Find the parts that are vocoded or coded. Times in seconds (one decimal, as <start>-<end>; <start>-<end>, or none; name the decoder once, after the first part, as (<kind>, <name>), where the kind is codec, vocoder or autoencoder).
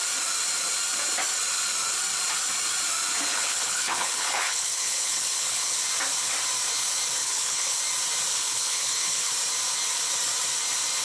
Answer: 3.3-5.8 (codec, HILCodec); 7.2-7.8; 8.3-9.3